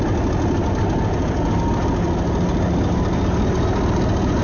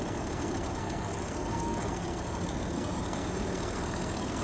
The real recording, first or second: first